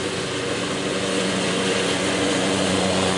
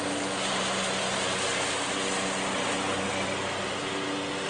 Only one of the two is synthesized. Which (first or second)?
first